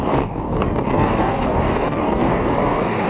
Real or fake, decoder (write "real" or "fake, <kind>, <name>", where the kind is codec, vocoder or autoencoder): fake, codec, DAC